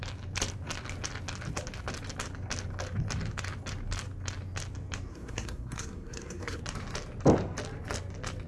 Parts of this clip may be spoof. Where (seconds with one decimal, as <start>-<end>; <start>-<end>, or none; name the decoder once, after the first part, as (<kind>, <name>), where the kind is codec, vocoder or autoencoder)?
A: 5.1-6.6 (codec, SNAC)